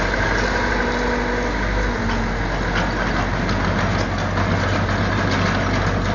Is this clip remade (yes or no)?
no